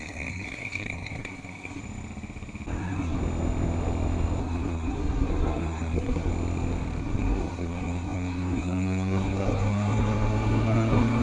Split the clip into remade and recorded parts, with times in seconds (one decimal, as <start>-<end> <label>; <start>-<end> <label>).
0.0-1.8 remade; 1.8-2.8 recorded; 2.8-3.2 remade; 3.2-4.4 recorded; 4.4-6.3 remade; 6.3-7.0 recorded; 7.0-11.2 remade